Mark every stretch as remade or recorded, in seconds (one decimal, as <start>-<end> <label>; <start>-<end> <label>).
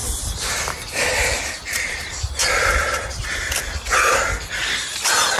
0.0-3.2 remade; 3.2-5.4 recorded